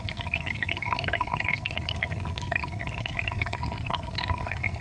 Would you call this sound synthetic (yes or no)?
yes